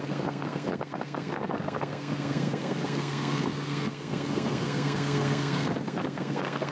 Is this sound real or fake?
fake